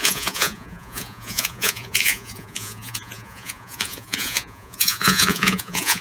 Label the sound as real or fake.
fake